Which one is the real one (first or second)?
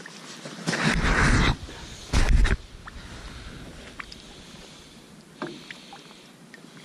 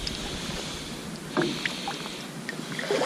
second